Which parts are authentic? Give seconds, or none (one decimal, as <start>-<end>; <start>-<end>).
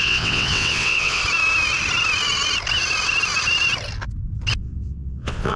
1.2-4.6